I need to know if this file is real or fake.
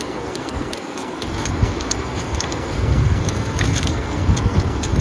fake